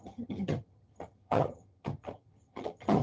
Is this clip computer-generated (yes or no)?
yes